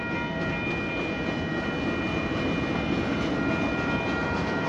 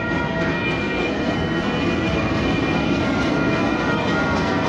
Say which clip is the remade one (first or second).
second